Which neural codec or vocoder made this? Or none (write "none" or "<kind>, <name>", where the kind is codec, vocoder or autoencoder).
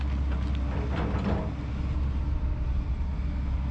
none